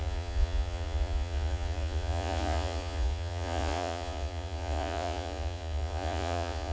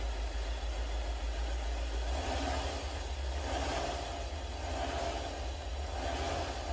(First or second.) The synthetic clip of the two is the first